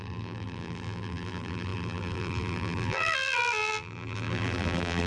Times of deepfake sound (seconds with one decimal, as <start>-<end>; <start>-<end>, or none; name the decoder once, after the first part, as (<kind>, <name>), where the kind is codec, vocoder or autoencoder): 0.0-5.1 (vocoder, BigVGAN v2)